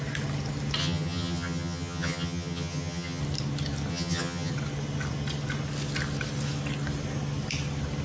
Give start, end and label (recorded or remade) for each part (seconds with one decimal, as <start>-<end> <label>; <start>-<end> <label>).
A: 0.0-0.8 recorded; 0.8-3.2 remade; 3.2-3.9 recorded; 3.9-4.5 remade; 4.5-8.0 recorded